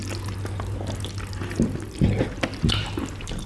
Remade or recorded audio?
recorded